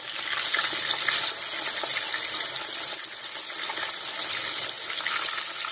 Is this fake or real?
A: real